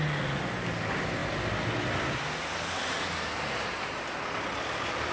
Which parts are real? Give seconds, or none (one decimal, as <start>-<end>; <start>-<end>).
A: 0.0-5.1